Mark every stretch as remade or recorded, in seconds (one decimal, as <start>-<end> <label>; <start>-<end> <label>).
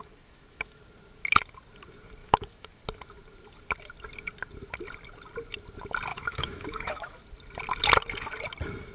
0.0-0.8 remade; 0.8-2.2 recorded; 2.2-2.8 remade; 2.8-6.1 recorded; 6.1-7.2 remade; 7.2-8.9 recorded